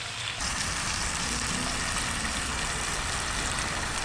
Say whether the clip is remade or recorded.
recorded